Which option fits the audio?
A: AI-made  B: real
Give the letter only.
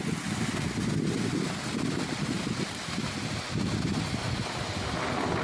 B